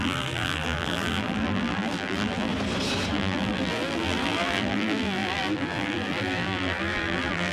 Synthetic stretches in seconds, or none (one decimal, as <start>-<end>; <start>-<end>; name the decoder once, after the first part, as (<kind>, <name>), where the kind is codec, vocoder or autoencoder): 0.0-2.5 (vocoder, BigVGAN v2); 3.1-7.5